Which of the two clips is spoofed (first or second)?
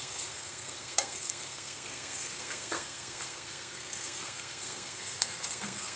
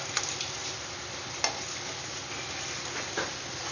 first